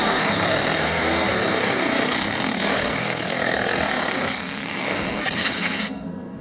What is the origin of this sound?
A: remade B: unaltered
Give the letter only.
A